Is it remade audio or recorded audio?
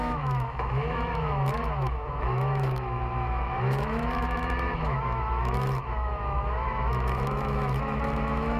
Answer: remade